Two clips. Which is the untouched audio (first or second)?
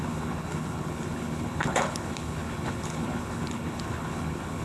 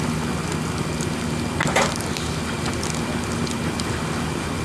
second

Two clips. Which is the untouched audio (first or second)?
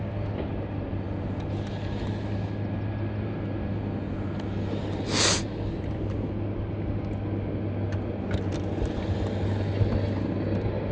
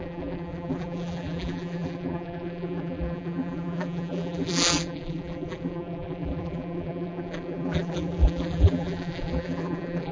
first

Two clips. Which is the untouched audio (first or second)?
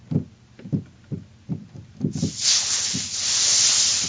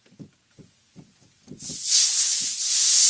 first